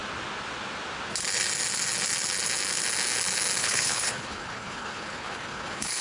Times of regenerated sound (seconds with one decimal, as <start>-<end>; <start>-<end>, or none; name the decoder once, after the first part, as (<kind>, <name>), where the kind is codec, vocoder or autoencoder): 3.6-6.0 (codec, HILCodec)